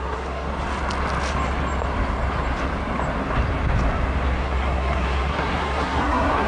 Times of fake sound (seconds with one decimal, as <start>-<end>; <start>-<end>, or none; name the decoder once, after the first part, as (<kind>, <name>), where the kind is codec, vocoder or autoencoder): 0.0-0.5 (codec, SNAC); 4.4-6.5